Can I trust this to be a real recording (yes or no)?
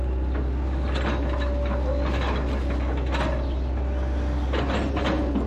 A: yes